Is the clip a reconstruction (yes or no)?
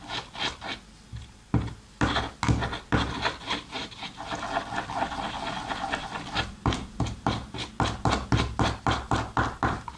no